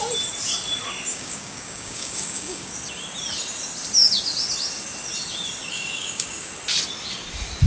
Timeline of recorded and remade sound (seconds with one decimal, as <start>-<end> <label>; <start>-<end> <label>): 0.0-1.1 recorded; 1.1-2.7 remade; 2.7-5.7 recorded; 5.7-6.5 remade; 6.5-7.7 recorded